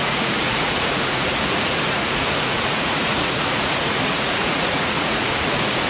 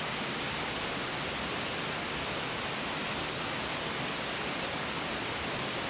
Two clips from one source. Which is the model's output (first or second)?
first